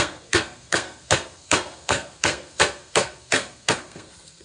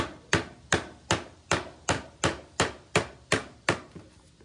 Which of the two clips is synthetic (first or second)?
first